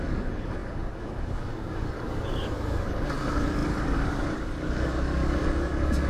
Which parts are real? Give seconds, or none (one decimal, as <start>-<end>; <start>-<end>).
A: none